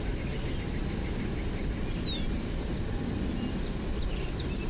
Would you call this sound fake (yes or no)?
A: no